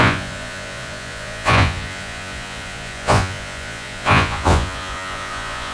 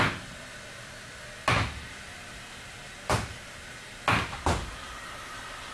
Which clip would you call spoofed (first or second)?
first